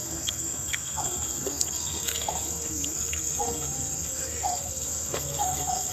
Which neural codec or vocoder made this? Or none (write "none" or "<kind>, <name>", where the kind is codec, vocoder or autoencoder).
codec, SNAC